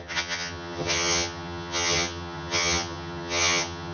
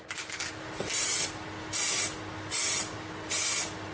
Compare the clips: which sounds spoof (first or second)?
first